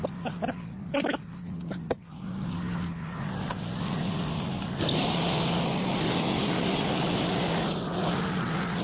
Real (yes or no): yes